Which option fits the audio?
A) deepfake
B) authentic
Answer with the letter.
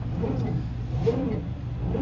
B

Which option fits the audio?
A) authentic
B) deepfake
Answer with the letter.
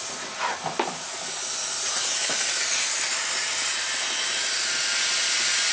A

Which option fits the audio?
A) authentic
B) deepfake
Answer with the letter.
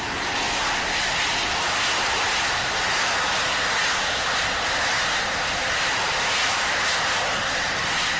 A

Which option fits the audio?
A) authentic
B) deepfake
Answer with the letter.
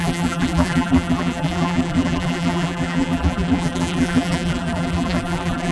B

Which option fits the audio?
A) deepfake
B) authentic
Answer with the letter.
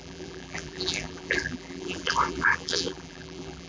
A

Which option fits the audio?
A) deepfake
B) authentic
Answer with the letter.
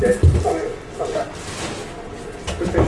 B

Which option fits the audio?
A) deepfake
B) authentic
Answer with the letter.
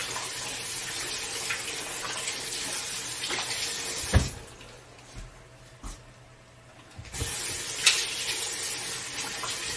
B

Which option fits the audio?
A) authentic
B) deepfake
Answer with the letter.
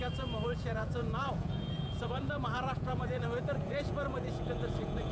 B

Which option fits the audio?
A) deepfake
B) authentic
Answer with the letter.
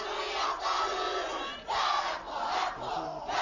B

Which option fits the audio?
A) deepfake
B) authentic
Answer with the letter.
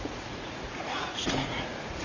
A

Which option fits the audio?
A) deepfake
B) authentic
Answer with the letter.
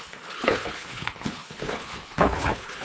A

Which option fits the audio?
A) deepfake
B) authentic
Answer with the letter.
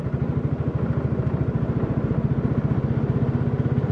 B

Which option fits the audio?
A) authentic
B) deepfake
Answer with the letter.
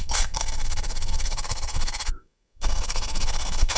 B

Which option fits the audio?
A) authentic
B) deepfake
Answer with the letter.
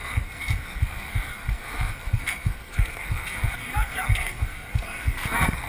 B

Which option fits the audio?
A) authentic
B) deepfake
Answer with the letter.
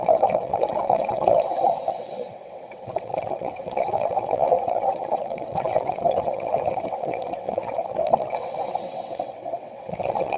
B